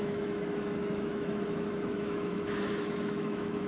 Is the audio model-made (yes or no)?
yes